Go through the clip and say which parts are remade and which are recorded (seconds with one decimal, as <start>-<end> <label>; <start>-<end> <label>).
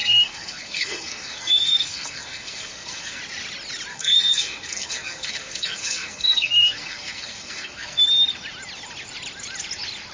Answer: 0.0-3.2 remade; 3.2-3.9 recorded; 3.9-8.0 remade; 8.0-10.1 recorded